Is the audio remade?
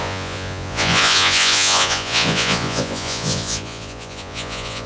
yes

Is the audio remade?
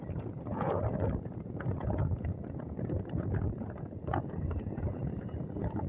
yes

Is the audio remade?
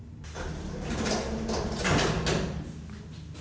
no